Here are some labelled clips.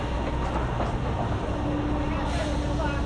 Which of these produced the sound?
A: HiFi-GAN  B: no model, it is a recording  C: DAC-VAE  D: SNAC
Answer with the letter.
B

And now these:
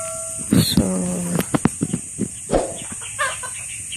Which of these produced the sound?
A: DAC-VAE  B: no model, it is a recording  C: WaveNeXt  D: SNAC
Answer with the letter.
B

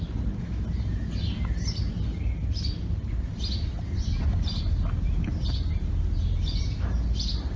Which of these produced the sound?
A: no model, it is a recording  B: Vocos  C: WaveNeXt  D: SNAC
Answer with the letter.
A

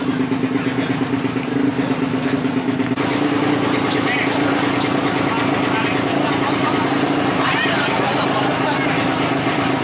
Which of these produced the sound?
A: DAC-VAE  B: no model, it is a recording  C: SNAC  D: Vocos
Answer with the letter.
B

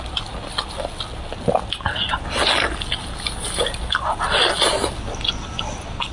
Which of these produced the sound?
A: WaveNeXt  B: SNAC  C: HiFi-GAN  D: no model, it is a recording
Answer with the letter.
D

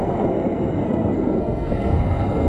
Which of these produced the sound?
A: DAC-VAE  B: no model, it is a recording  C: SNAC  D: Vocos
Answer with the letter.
C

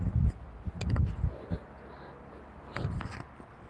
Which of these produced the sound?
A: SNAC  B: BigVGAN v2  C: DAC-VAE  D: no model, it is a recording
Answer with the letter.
D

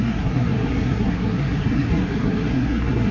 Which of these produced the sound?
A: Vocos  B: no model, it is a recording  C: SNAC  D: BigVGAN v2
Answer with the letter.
C